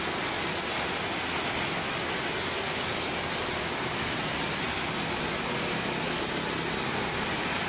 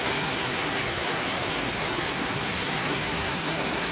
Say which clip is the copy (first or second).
second